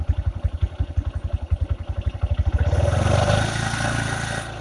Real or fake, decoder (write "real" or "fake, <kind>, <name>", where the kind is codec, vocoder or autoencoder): real